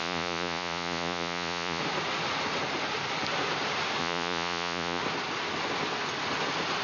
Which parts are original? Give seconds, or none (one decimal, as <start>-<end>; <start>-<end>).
1.8-4.0; 5.0-6.8